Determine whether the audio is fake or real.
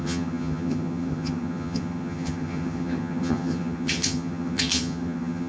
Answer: fake